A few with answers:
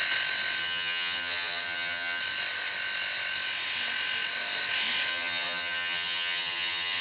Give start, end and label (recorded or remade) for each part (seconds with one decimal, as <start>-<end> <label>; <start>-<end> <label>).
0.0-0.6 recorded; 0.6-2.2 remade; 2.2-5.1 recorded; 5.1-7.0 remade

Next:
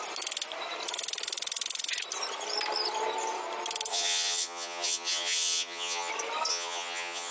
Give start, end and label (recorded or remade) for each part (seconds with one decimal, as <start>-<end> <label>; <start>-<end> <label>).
0.0-3.9 recorded; 3.9-6.1 remade; 6.1-6.5 recorded; 6.5-7.3 remade

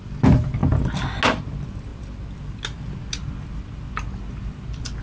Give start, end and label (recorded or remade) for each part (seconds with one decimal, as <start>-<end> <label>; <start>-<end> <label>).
0.0-5.0 recorded

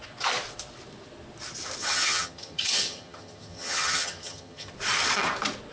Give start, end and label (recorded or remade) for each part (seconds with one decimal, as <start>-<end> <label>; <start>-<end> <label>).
0.0-1.8 recorded; 1.8-4.7 remade; 4.7-5.7 recorded

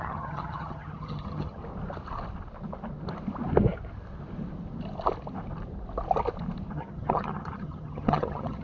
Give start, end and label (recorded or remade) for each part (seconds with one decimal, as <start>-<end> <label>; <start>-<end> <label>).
0.0-1.6 remade; 1.6-6.7 recorded; 6.7-8.6 remade

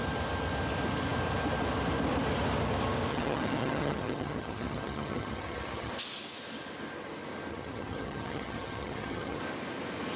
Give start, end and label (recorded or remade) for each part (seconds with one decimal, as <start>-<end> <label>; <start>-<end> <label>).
0.0-3.1 recorded; 3.1-5.9 remade; 5.9-7.5 recorded; 7.5-9.4 remade; 9.4-10.2 recorded